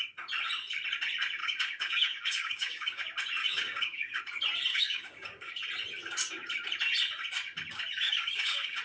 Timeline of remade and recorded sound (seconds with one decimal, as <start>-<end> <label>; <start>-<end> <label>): 0.0-1.4 recorded; 1.4-3.0 remade; 3.0-3.4 recorded; 3.4-4.2 remade; 4.2-4.7 recorded; 4.7-5.5 remade; 5.5-7.9 recorded; 7.9-8.8 remade